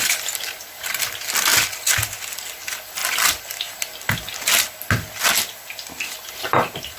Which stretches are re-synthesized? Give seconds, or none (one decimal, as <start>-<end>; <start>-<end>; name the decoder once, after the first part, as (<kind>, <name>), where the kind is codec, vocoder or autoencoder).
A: none